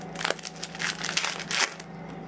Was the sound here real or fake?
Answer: real